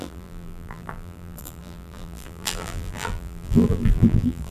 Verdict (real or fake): fake